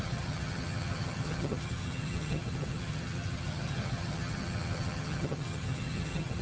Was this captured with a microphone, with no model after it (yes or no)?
no